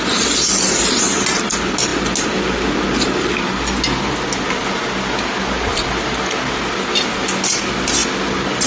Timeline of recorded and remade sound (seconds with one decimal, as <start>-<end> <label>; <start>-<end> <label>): 0.0-8.7 recorded